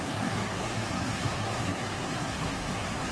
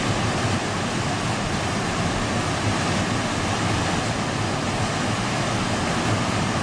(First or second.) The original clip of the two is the second